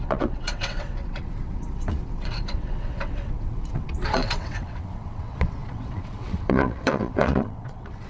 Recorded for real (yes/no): no